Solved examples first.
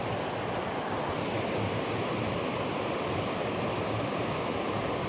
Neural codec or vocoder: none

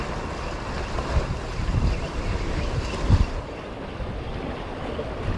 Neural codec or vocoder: none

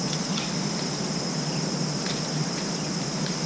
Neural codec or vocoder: none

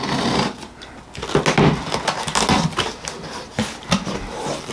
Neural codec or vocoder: none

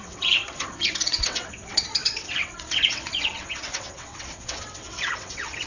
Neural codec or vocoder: vocoder, WaveNeXt